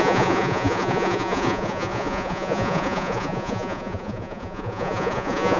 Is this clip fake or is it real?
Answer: fake